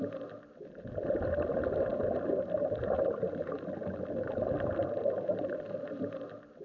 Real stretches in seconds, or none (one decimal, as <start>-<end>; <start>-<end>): 0.0-6.6